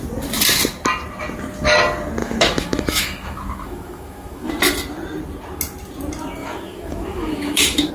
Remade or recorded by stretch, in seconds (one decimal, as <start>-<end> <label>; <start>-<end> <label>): 0.0-2.2 recorded; 2.2-4.5 remade; 4.5-6.4 recorded; 6.4-7.9 remade